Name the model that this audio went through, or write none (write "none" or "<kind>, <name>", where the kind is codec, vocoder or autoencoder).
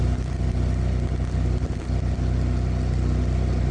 none